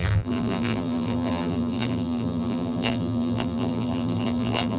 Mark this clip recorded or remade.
remade